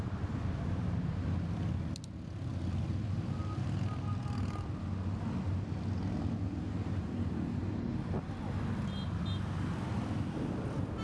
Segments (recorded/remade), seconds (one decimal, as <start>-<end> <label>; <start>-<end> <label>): 0.0-11.0 recorded